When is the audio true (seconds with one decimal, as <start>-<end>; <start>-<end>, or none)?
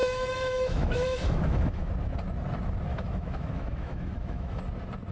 1.9-2.9; 4.6-5.1